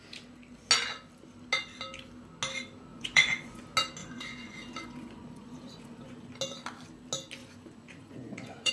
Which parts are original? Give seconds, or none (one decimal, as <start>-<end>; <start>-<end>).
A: 0.0-2.9; 3.6-4.0; 6.4-7.4